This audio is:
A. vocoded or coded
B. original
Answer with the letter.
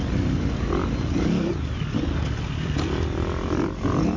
B